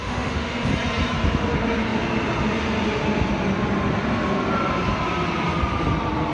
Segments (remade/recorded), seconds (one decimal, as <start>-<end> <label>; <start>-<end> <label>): 0.0-0.7 remade; 0.7-6.3 recorded